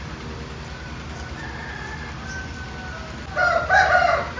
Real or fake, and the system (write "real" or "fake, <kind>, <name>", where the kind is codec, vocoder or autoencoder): real